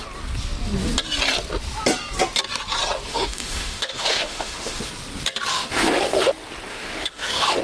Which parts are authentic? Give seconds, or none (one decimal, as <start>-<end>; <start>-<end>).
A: 0.0-3.1; 4.9-5.5; 6.3-6.7